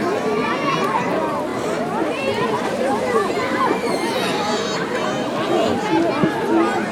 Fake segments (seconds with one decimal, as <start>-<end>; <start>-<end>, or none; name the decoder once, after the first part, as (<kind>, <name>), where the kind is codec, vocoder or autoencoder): 1.5-3.3 (vocoder, BigVGAN v2)